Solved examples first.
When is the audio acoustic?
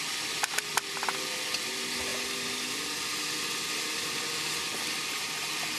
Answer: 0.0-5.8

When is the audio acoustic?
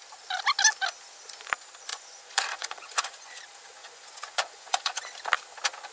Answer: 0.0-1.9; 3.4-3.8; 5.0-5.9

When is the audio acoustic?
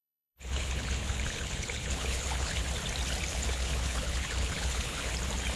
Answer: 2.6-3.3; 5.1-5.6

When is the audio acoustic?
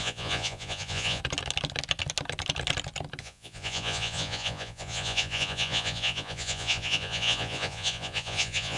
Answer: 1.2-3.2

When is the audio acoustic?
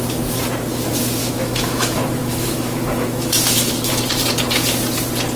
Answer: 0.0-1.2; 3.9-5.4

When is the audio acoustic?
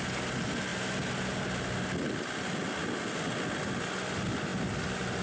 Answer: 0.0-5.2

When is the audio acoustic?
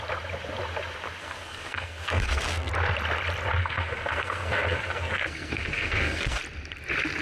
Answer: 0.0-1.2; 2.7-3.6; 6.4-7.2